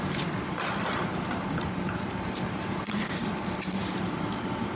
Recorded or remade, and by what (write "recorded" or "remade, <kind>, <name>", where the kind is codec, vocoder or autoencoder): remade, vocoder, BigVGAN v2